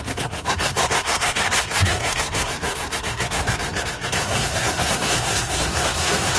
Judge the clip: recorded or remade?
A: remade